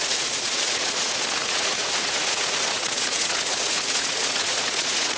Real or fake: fake